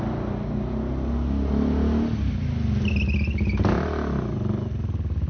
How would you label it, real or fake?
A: real